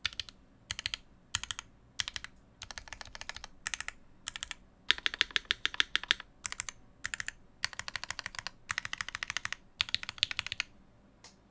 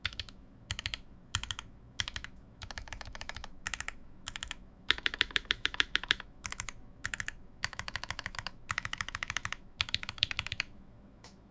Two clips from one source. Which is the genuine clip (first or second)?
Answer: first